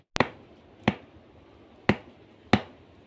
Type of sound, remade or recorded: recorded